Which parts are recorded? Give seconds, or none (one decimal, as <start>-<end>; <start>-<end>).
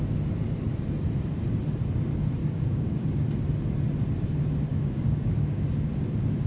0.0-2.4; 3.1-4.7; 5.9-6.5